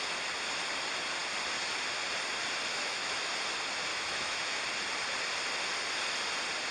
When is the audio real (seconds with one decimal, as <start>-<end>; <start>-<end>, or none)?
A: 0.0-2.7; 3.3-3.9; 4.6-6.7